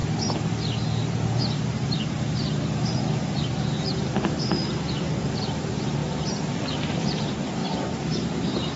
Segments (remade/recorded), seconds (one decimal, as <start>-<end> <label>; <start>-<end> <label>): 0.0-1.4 recorded; 1.4-6.0 remade; 6.0-6.7 recorded; 6.7-8.8 remade